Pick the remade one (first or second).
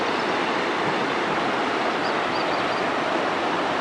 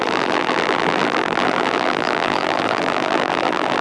second